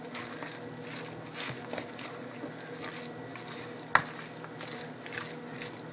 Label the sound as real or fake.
real